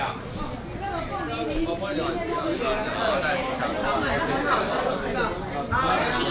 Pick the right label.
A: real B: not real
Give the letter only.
A